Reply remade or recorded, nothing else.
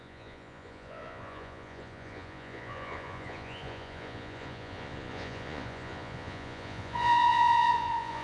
remade